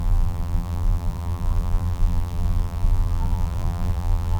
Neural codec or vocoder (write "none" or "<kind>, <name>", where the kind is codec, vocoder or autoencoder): vocoder, BigVGAN v2